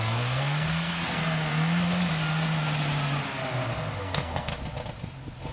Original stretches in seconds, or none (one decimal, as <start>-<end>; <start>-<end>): 1.2-4.0; 4.5-5.5